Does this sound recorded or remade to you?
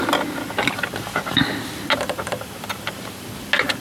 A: recorded